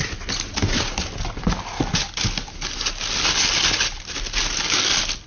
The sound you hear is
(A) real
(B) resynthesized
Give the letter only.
A